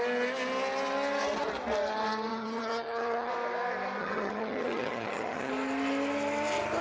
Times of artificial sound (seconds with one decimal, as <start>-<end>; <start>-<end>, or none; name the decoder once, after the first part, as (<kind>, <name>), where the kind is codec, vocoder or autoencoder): 2.3-3.3 (vocoder, HiFi-GAN); 4.0-5.5

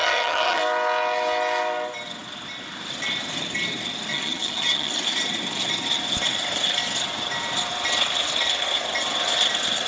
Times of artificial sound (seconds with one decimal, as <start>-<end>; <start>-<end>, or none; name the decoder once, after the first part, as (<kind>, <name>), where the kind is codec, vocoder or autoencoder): 0.0-0.6 (vocoder, HiFi-GAN); 4.1-4.9